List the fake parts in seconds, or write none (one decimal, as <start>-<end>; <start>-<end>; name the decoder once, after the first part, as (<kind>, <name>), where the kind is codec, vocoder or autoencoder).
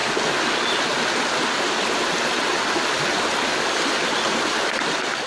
none